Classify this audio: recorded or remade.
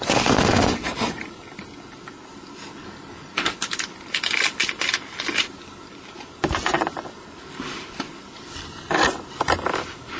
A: recorded